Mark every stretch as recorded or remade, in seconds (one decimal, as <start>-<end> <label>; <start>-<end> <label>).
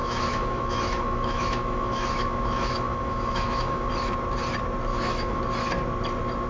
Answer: 0.0-3.9 remade; 3.9-4.9 recorded; 4.9-5.4 remade; 5.4-6.5 recorded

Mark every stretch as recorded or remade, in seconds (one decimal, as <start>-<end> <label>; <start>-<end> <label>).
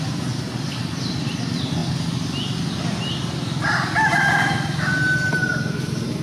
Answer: 0.0-6.2 recorded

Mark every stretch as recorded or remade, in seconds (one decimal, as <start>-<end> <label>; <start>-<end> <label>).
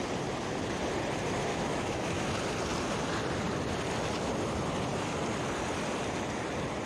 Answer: 0.0-1.5 recorded; 1.5-2.3 remade; 2.3-6.8 recorded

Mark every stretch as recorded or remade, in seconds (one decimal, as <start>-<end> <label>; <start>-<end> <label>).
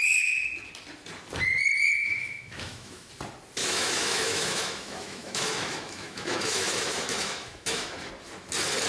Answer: 0.0-2.0 recorded; 2.0-3.1 remade; 3.1-3.6 recorded; 3.6-8.1 remade; 8.1-8.9 recorded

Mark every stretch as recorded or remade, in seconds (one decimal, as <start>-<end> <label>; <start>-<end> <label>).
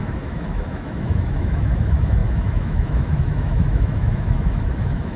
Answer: 0.0-5.2 remade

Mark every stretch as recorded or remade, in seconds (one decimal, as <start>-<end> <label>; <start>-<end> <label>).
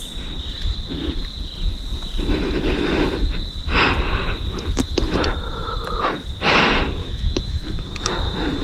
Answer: 0.0-7.0 recorded; 7.0-8.1 remade; 8.1-8.6 recorded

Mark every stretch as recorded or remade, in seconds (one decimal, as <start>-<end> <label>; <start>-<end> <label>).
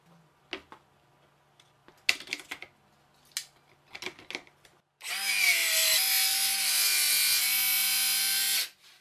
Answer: 0.0-9.0 recorded